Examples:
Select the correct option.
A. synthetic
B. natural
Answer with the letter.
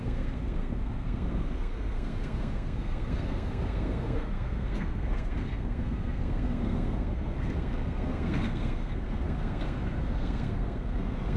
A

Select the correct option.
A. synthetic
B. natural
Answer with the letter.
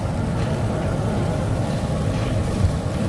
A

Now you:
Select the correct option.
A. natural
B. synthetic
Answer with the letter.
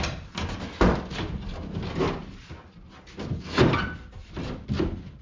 A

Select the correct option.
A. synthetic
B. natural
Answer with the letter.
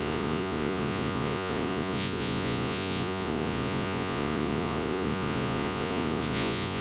A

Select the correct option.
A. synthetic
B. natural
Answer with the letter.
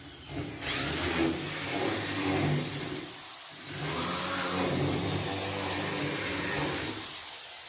B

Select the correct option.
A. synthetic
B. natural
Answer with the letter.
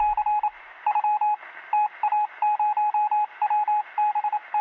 B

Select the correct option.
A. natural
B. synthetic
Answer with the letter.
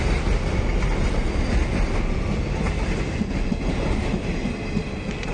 A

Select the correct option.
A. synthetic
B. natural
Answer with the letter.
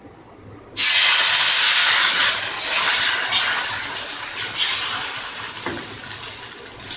B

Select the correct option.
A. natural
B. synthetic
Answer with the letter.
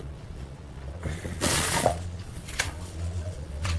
B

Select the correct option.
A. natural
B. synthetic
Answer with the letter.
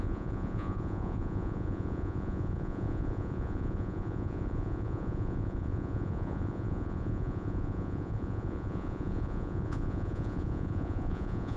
B